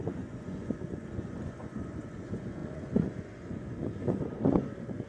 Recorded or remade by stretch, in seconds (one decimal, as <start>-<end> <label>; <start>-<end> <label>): 0.0-5.1 remade